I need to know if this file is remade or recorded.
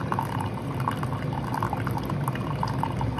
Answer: recorded